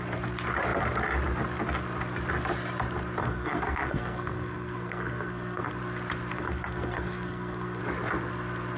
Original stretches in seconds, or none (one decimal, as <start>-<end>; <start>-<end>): 0.0-3.2; 5.8-6.3; 7.8-8.8